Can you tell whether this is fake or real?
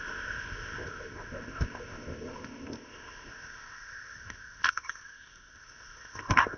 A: fake